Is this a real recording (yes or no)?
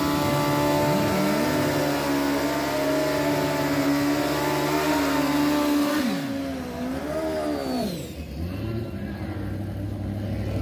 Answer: yes